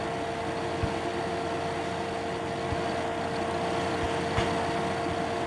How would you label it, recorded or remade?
recorded